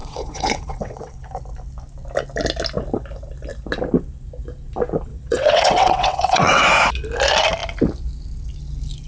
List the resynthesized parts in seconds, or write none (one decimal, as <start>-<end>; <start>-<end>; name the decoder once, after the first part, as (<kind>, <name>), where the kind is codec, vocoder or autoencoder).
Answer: 0.0-1.4 (vocoder, WaveNeXt); 5.1-6.6